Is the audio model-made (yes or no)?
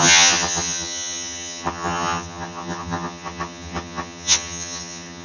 yes